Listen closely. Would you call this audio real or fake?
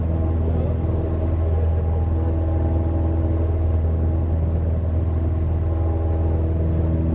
real